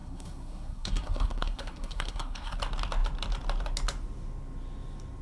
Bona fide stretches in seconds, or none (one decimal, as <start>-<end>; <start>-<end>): 2.6-5.2